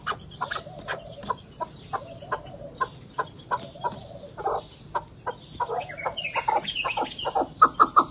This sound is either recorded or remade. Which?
recorded